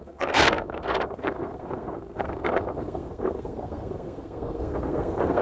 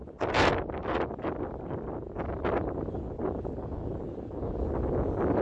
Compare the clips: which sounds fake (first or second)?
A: first